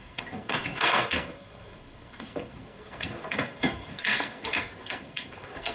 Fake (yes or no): yes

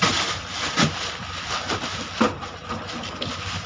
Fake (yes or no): no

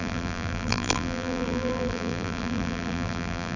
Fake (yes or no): yes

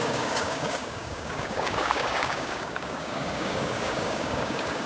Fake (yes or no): yes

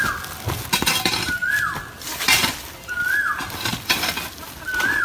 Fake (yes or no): no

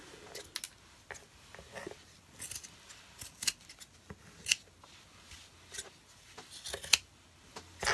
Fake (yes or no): no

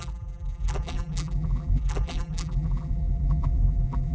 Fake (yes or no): yes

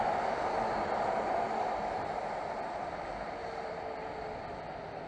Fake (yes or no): no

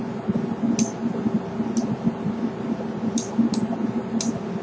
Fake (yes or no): no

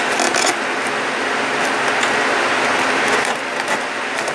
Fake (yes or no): no